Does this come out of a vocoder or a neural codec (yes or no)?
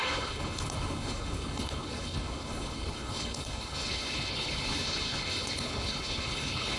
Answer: yes